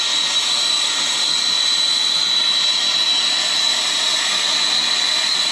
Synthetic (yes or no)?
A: no